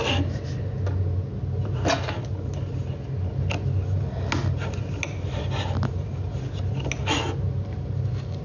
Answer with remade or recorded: recorded